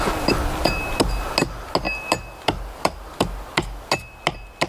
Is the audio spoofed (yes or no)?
no